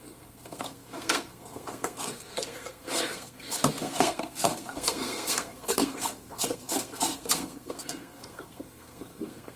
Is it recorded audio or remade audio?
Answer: remade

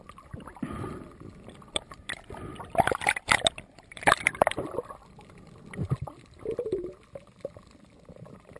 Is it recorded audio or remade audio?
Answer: remade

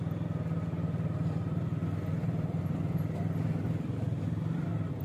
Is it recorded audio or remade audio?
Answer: recorded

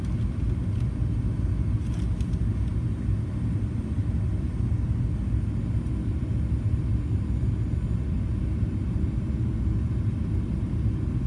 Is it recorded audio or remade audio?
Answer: recorded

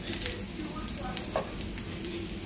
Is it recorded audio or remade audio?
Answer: recorded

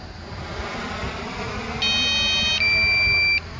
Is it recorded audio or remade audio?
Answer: recorded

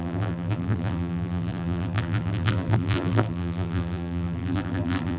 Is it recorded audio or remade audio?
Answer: remade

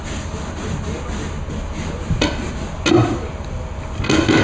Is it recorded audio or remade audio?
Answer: recorded